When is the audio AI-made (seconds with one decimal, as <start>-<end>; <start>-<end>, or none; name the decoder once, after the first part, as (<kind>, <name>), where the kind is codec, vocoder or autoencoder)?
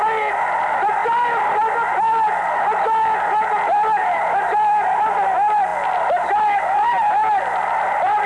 none